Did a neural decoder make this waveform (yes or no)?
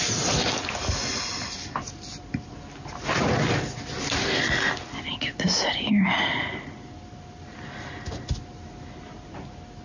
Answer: no